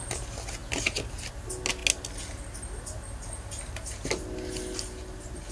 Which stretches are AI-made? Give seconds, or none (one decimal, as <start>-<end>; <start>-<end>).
none

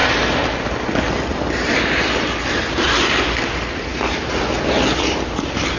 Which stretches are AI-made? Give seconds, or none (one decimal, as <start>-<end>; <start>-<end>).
none